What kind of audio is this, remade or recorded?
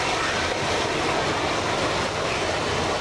recorded